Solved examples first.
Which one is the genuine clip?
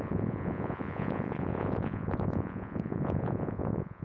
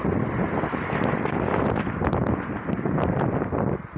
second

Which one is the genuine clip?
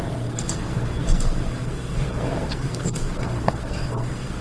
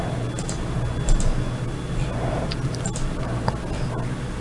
second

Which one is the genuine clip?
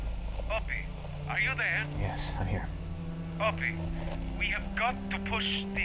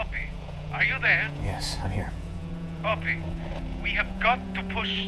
first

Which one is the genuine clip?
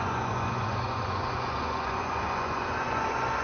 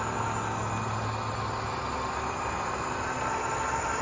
second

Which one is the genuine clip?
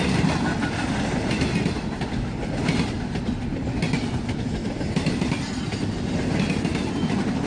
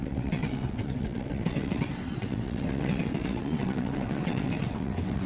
first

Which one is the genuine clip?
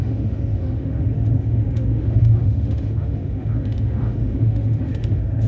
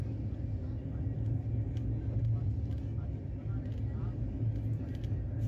second